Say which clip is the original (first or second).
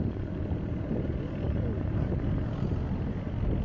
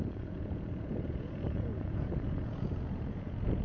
first